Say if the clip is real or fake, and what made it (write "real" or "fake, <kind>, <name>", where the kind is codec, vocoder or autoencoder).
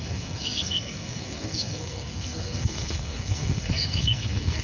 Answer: fake, codec, SNAC